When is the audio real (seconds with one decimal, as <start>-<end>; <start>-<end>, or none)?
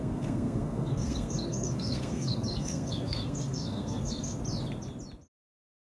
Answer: 4.4-5.3